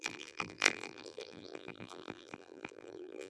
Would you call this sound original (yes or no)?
no